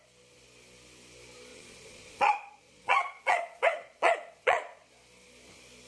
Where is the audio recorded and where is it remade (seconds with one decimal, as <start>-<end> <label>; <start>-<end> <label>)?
0.0-1.5 recorded; 1.5-4.9 remade; 4.9-5.9 recorded